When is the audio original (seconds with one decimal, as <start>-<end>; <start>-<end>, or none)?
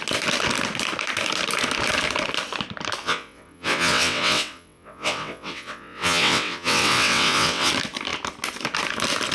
0.0-3.0; 7.7-9.3